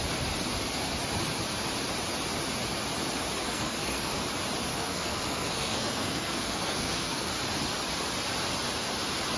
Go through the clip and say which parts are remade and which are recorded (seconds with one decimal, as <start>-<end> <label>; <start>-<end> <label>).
0.0-3.4 recorded; 3.4-4.2 remade; 4.2-4.7 recorded; 4.7-7.3 remade; 7.3-9.4 recorded